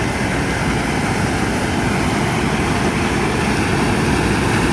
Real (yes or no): yes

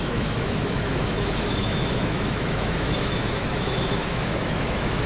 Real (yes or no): no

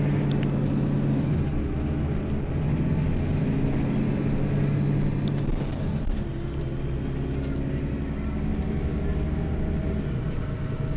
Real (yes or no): yes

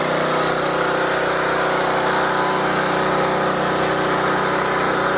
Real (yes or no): yes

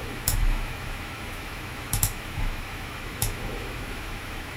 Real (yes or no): no